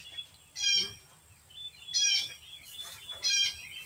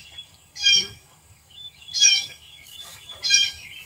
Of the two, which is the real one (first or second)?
first